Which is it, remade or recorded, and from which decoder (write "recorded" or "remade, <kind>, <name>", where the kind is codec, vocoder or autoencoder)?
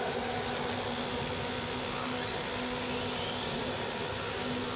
recorded